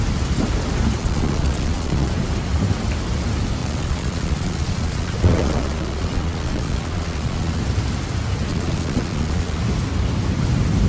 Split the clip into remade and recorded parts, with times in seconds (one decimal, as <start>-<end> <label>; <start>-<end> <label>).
0.0-1.0 recorded; 1.0-2.1 remade; 2.1-3.6 recorded; 3.6-7.6 remade; 7.6-8.5 recorded; 8.5-9.6 remade; 9.6-10.9 recorded

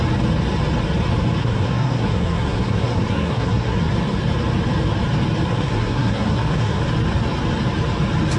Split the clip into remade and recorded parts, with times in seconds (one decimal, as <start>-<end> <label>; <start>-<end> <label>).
0.0-1.4 recorded; 1.4-3.9 remade; 3.9-5.5 recorded; 5.5-6.8 remade; 6.8-8.4 recorded

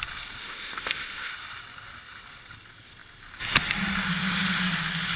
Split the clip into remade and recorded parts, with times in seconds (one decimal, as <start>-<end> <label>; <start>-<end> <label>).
0.0-0.4 recorded; 0.4-1.3 remade; 1.3-5.2 recorded

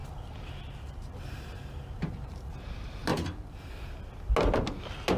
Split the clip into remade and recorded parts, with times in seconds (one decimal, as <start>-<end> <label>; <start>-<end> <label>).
0.0-2.5 remade; 2.5-3.1 recorded; 3.1-3.7 remade; 3.7-5.2 recorded

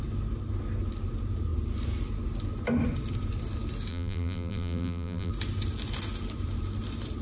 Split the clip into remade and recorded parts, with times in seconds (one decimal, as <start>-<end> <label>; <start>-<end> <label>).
0.0-3.9 recorded; 3.9-5.3 remade; 5.3-7.2 recorded

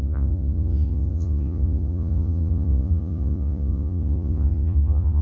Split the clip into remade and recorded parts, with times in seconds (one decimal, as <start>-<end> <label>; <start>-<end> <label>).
0.0-5.2 remade